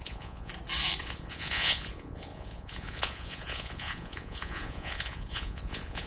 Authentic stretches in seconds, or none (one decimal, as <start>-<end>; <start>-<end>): 0.5-1.0